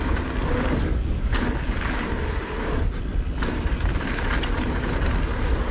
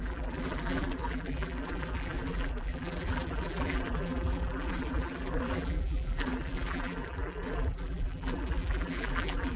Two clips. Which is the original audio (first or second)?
first